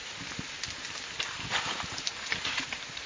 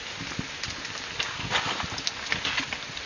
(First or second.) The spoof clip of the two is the first